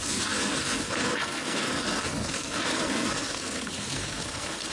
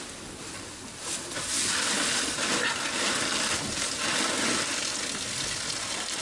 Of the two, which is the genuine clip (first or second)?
second